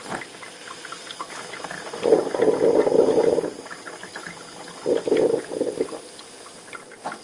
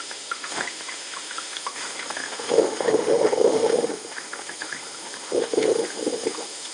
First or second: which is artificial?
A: second